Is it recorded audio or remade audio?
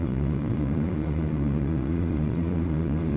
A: remade